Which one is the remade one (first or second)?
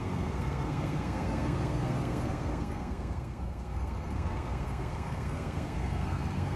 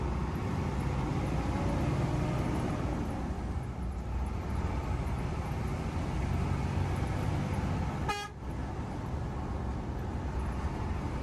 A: first